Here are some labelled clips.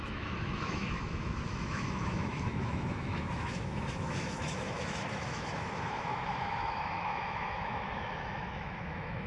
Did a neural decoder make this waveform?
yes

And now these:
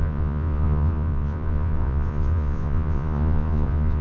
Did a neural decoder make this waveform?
yes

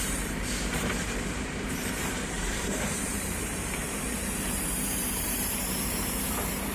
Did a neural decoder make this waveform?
yes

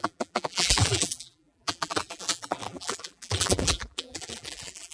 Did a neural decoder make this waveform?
yes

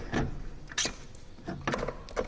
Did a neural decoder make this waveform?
no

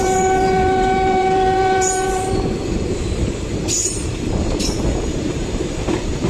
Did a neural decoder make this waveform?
yes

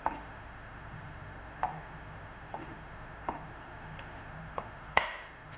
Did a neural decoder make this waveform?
yes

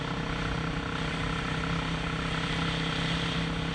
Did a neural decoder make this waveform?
no